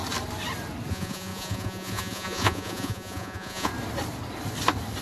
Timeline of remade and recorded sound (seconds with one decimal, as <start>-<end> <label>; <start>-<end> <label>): 0.0-0.9 recorded; 0.9-3.7 remade; 3.7-5.0 recorded